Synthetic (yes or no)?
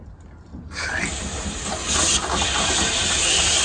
no